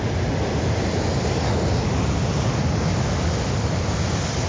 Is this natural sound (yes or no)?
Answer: yes